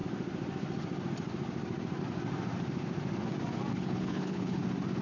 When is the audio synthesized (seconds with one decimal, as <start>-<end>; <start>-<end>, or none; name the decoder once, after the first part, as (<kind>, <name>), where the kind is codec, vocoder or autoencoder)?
3.7-4.6 (codec, HILCodec)